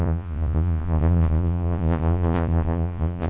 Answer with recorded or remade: remade